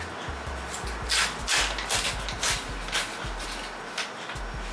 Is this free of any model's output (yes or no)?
yes